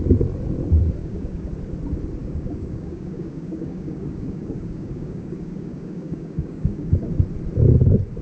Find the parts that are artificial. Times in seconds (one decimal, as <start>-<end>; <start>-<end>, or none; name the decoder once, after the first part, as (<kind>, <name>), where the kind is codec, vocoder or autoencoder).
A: 1.0-1.5 (codec, DAC); 2.2-7.1